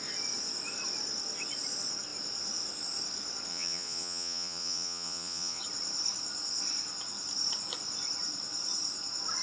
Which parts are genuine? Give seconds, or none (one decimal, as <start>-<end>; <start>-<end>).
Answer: 0.0-3.5; 5.6-9.4